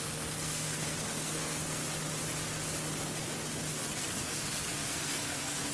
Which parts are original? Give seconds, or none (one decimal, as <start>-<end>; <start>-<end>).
1.8-3.9